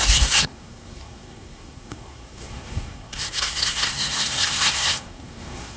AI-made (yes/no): yes